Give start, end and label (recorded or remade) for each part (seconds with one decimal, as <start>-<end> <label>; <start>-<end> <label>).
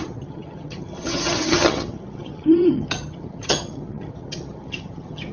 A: 0.0-5.3 remade